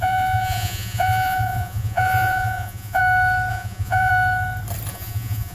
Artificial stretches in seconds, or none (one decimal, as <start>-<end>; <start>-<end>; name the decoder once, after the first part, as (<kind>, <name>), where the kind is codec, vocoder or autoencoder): 0.0-3.0 (vocoder, Vocos); 3.5-4.1; 4.9-5.5